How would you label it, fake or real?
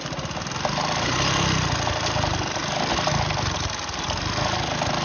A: real